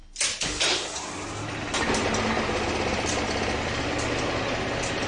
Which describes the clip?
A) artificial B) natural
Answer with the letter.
B